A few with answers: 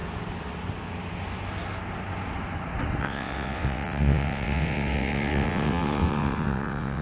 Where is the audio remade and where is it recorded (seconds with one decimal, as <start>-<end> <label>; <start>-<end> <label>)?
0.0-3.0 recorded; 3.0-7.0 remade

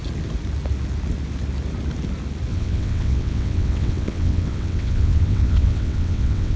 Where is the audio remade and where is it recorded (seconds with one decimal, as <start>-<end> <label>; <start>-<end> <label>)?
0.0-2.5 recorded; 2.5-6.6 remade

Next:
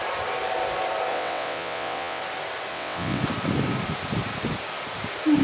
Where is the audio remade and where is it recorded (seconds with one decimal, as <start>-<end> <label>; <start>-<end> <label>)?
0.0-1.1 recorded; 1.1-2.2 remade; 2.2-2.7 recorded; 2.7-3.2 remade; 3.2-5.4 recorded

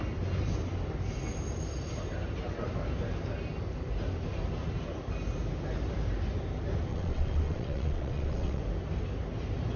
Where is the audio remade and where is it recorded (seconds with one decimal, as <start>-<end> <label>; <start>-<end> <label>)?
0.0-6.9 recorded; 6.9-8.6 remade; 8.6-9.8 recorded